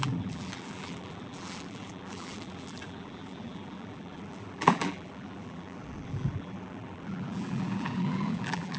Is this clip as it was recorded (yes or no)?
no